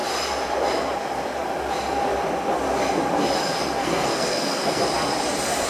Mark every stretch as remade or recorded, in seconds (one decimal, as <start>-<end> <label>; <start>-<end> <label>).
0.0-3.8 recorded; 3.8-4.8 remade; 4.8-5.7 recorded